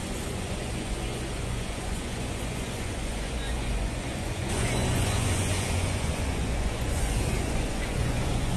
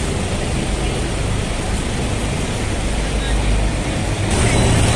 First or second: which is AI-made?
first